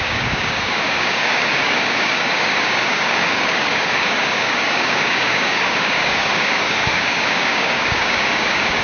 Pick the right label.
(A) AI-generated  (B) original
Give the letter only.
A